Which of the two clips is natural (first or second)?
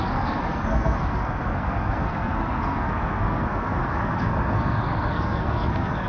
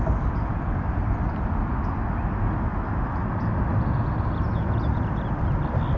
second